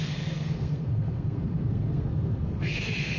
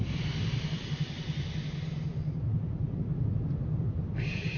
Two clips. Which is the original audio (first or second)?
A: second